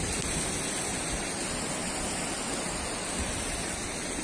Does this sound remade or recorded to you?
recorded